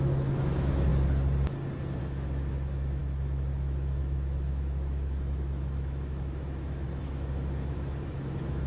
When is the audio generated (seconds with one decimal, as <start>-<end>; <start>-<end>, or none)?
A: 0.0-0.9; 2.0-8.7